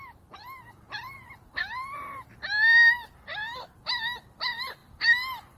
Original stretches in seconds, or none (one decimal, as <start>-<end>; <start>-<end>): none

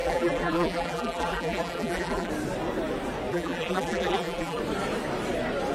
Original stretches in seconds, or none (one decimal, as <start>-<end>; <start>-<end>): 2.3-3.3; 4.6-5.7

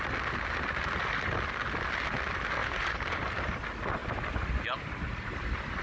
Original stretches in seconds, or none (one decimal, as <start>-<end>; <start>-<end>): 0.0-2.6; 3.5-5.8

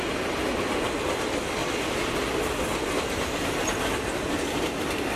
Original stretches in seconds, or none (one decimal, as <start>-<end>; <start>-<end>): 0.0-5.2

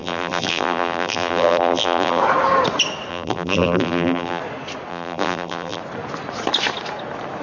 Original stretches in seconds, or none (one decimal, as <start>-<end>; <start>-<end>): 2.2-3.1; 4.4-4.9; 5.8-7.4

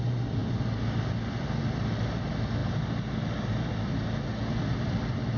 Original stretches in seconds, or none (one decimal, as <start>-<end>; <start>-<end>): 0.0-5.4

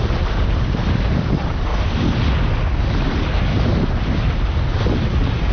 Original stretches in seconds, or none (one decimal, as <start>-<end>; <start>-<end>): 1.7-5.0

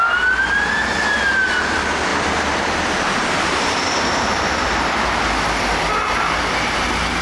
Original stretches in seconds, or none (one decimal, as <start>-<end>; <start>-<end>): 0.0-2.1; 4.9-7.2